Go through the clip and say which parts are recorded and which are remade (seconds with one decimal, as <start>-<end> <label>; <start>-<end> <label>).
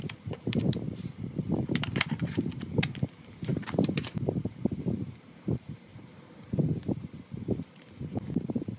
0.0-5.9 remade; 5.9-8.1 recorded; 8.1-8.8 remade